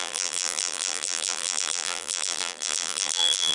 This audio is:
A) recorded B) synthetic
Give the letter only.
B